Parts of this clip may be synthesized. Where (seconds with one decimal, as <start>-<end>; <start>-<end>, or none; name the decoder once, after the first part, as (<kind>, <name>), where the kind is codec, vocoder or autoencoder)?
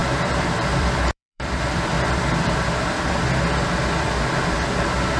0.0-3.1 (vocoder, BigVGAN v2)